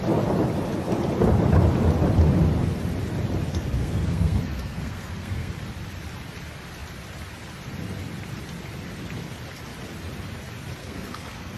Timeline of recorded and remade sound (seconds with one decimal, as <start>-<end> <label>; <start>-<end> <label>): 0.0-3.5 recorded; 3.5-5.5 remade; 5.5-10.8 recorded; 10.8-11.6 remade